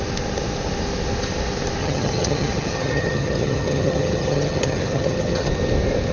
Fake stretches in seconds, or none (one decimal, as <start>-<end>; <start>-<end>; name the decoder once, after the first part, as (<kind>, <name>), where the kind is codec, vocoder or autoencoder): 1.8-5.5 (vocoder, HiFi-GAN)